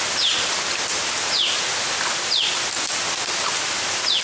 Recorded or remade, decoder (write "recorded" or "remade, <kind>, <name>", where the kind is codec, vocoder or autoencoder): recorded